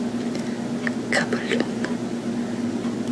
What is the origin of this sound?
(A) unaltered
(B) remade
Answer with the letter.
A